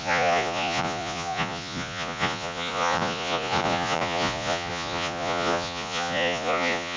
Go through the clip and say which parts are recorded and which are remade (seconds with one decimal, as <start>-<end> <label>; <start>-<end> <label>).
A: 0.0-7.0 remade

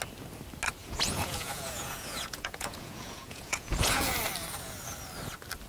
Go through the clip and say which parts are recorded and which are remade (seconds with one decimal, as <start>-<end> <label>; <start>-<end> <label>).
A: 0.0-0.8 recorded; 0.8-4.2 remade; 4.2-5.7 recorded

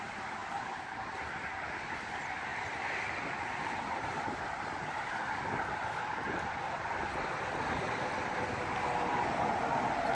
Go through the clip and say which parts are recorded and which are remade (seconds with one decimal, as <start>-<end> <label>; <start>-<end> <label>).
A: 0.0-10.1 recorded

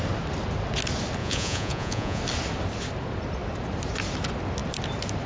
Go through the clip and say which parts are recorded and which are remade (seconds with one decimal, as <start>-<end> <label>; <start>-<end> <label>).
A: 0.0-1.2 recorded; 1.2-2.2 remade; 2.2-5.3 recorded

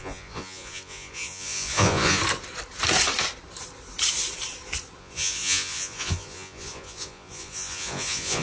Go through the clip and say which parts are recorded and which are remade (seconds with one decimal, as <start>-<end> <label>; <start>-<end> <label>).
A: 0.0-2.2 remade; 2.2-5.0 recorded; 5.0-8.4 remade

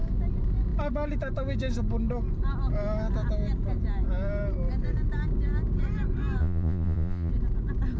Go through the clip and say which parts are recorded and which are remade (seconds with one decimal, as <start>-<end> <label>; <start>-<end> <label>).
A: 0.0-6.4 recorded; 6.4-7.3 remade; 7.3-8.0 recorded

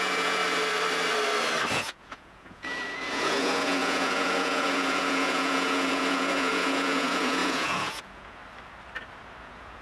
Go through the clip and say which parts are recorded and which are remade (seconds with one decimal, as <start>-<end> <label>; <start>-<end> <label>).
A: 0.0-0.4 remade; 0.4-1.7 recorded; 1.7-8.4 remade; 8.4-9.4 recorded; 9.4-9.8 remade